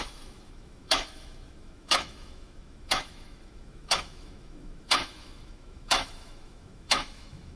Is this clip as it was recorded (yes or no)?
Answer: no